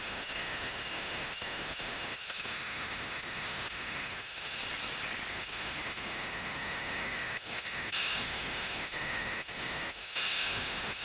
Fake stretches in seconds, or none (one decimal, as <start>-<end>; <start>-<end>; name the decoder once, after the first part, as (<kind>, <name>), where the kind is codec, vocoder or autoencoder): 0.0-4.6 (autoencoder, DAC-VAE); 5.3-11.0